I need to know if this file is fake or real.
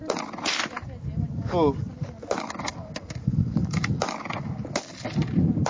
real